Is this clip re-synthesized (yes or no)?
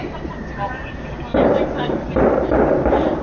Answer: no